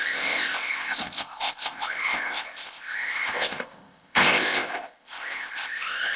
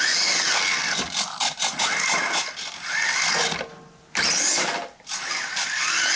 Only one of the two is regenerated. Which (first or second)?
first